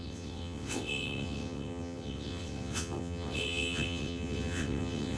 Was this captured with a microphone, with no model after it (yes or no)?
no